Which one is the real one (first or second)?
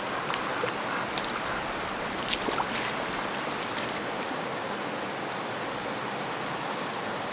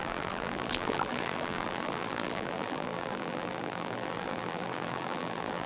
first